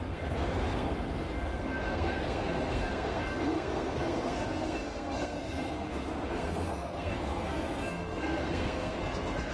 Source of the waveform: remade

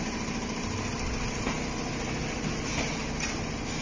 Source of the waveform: recorded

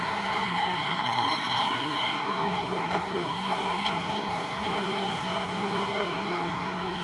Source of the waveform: remade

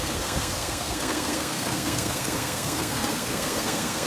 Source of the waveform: remade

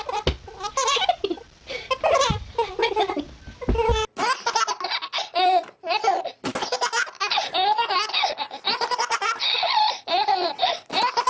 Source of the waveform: recorded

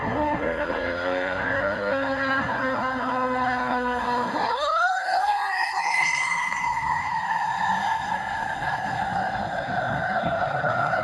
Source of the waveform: remade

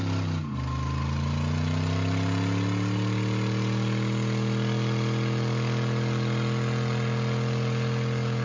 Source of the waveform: recorded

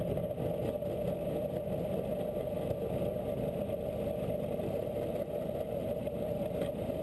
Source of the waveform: recorded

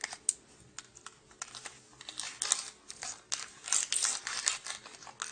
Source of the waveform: recorded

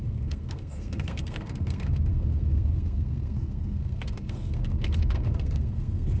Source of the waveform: remade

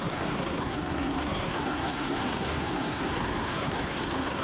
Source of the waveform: remade